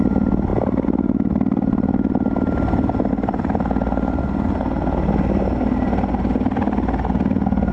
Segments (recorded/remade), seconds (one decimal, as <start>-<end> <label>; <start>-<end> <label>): 0.0-7.7 recorded